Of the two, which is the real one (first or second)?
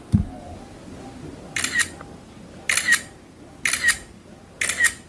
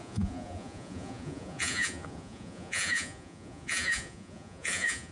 first